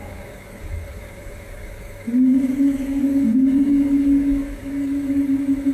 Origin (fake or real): fake